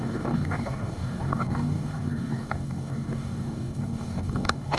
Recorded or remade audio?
remade